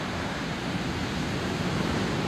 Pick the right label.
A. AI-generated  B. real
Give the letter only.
B